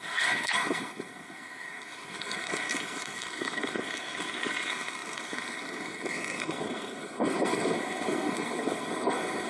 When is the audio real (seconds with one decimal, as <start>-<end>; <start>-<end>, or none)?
none